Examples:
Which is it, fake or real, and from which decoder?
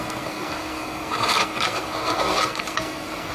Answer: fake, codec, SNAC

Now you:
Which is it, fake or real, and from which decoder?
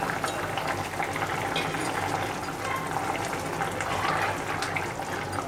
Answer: real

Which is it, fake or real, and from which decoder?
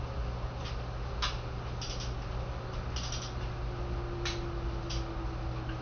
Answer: real